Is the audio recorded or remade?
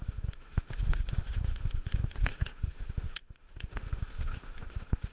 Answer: remade